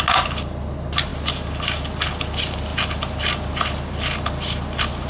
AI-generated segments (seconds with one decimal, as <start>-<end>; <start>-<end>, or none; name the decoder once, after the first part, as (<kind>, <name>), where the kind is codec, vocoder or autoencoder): none